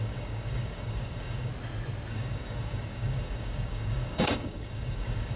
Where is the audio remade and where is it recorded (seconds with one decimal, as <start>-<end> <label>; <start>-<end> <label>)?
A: 0.0-1.5 remade; 1.5-2.1 recorded; 2.1-5.4 remade